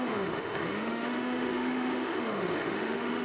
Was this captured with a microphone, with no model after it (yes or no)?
no